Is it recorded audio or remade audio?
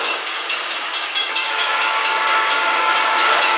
remade